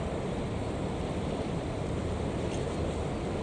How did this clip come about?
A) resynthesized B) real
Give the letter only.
B